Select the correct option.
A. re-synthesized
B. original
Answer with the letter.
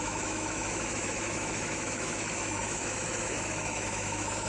A